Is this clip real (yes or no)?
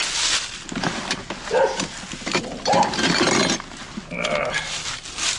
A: yes